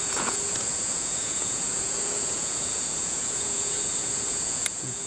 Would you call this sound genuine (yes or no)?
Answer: no